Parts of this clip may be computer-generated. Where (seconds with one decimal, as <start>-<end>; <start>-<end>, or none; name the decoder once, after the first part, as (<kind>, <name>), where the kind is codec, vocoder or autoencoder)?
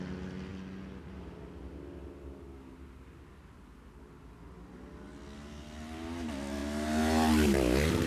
none